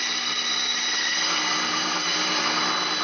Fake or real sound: real